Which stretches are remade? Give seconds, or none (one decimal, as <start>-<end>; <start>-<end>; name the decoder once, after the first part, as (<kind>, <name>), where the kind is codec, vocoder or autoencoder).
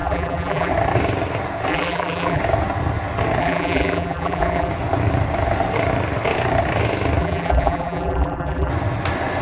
0.0-0.7 (vocoder, BigVGAN v2); 1.7-2.4; 3.4-4.7; 7.2-8.7